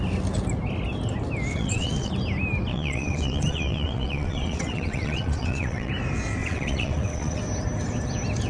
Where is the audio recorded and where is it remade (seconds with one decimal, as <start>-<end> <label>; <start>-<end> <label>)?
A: 0.0-1.5 recorded; 1.5-2.1 remade; 2.1-2.7 recorded; 2.7-5.9 remade; 5.9-6.4 recorded; 6.4-7.4 remade; 7.4-8.5 recorded